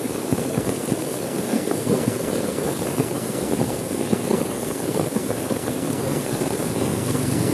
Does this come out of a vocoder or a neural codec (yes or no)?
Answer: yes